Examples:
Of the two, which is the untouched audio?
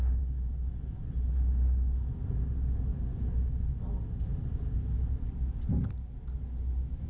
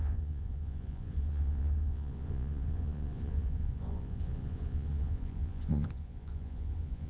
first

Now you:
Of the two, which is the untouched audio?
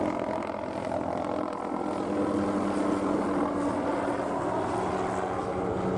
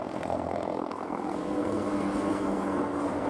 first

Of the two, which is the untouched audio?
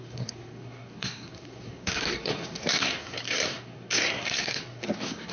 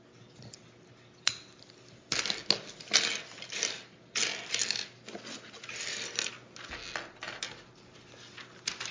second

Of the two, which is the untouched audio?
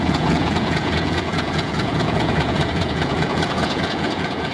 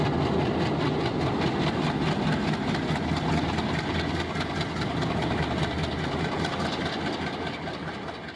second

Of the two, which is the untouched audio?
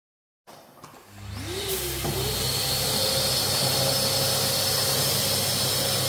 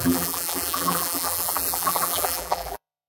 first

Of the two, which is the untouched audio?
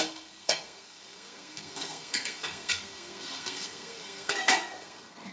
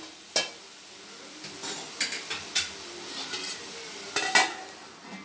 second